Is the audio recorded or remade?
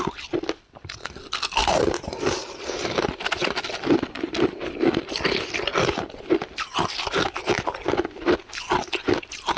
recorded